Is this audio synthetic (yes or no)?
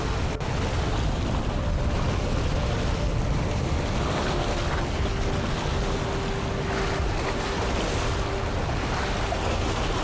no